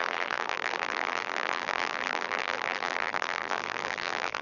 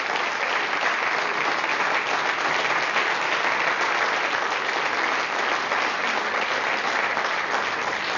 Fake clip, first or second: first